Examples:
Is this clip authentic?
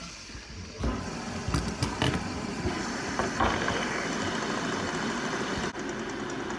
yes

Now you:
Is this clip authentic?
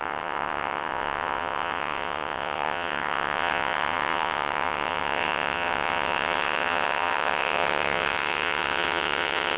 no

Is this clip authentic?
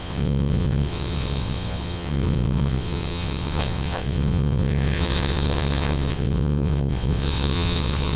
no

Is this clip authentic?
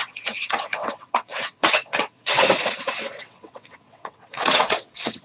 no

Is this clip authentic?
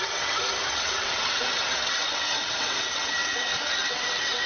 no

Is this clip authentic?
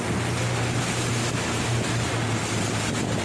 yes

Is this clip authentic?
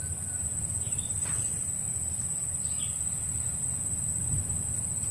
yes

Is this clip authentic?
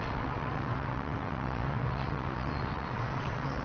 no